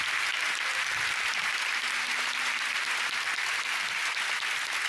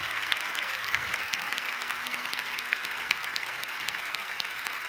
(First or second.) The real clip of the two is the first